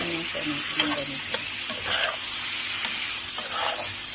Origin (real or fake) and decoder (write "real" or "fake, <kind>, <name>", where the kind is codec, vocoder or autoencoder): real